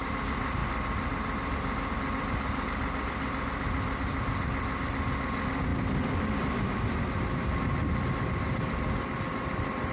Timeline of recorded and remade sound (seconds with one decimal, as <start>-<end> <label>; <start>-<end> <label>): 0.0-9.9 recorded